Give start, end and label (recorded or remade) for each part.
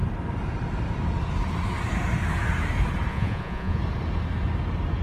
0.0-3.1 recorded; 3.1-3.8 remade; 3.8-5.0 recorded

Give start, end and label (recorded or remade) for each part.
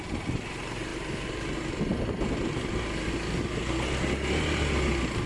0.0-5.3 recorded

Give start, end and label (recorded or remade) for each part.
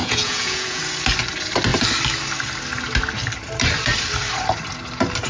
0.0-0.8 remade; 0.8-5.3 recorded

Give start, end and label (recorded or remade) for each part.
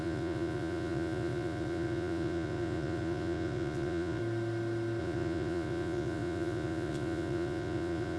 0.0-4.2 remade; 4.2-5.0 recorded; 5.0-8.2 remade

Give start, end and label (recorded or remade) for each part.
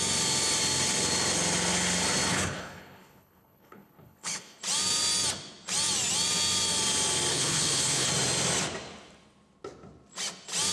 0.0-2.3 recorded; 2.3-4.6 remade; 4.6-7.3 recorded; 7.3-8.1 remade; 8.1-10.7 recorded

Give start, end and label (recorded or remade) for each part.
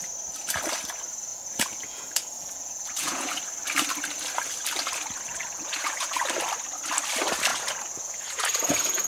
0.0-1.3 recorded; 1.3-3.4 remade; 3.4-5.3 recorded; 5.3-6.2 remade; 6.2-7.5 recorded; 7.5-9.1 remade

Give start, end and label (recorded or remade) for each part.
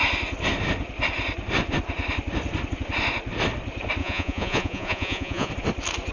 0.0-4.0 recorded; 4.0-5.5 remade; 5.5-6.1 recorded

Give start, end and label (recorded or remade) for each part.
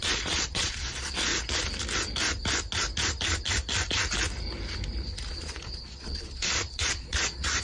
0.0-1.3 remade; 1.3-5.3 recorded; 5.3-7.6 remade